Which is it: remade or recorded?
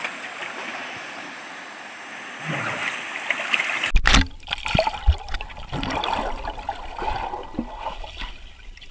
recorded